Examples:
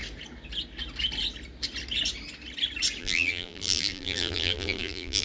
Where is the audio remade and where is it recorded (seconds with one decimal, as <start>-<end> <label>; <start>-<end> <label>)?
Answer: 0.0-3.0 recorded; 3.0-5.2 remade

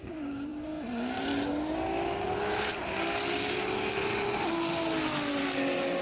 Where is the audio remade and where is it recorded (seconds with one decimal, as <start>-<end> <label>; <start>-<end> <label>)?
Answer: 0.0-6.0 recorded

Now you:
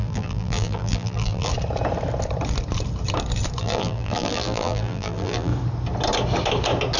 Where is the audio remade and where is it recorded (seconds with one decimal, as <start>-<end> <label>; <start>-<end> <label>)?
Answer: 0.0-1.5 remade; 1.5-3.6 recorded; 3.6-5.5 remade; 5.5-7.0 recorded